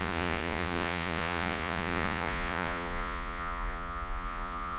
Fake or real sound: fake